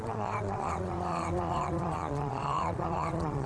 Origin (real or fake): fake